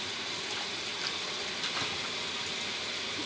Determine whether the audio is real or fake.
real